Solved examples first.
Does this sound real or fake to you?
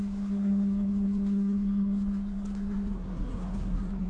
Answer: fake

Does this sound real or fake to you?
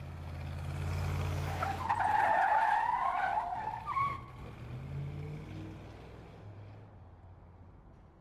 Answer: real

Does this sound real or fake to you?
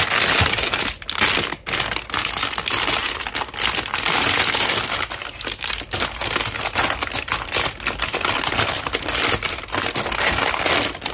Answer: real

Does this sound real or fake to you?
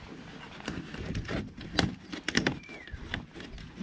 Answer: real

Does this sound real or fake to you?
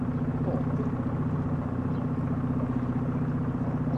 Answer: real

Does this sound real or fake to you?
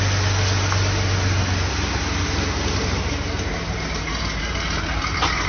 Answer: real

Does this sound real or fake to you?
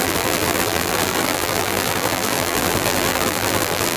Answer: fake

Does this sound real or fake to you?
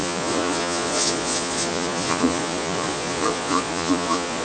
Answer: fake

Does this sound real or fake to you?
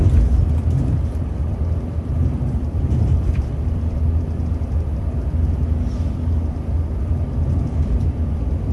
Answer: fake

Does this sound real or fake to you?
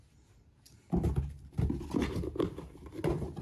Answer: real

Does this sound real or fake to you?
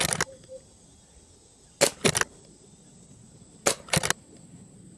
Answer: real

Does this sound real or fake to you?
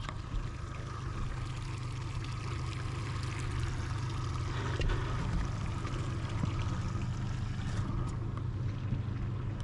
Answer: real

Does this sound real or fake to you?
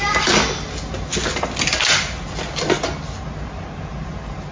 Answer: real